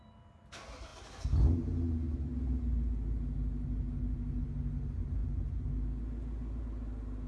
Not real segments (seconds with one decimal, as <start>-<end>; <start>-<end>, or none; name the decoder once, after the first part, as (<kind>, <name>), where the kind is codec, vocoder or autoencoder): none